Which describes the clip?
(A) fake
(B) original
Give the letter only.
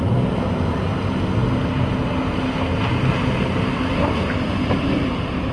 B